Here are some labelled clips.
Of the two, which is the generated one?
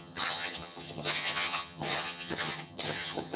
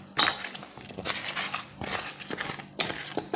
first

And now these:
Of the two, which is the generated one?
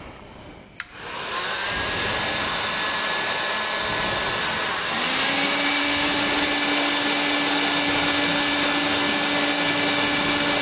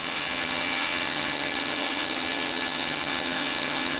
second